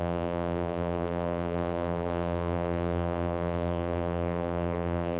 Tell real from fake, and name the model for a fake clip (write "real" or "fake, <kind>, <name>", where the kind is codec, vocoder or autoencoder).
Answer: fake, vocoder, BigVGAN v2